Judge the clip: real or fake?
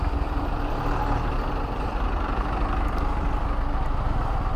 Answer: real